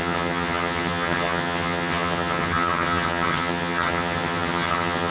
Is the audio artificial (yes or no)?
yes